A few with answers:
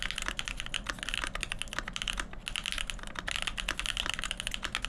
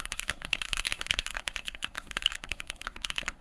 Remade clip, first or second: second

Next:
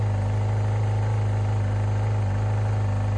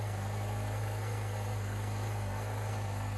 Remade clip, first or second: second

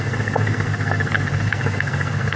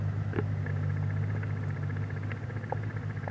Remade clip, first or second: first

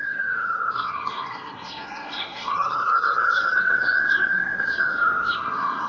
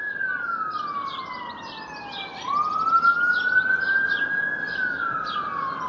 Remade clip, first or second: first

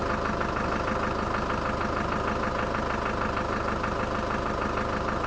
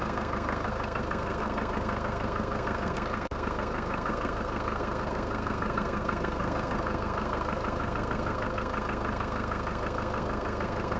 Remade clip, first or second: second